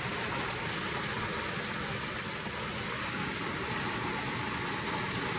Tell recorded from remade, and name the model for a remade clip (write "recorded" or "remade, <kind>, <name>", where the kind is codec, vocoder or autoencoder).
recorded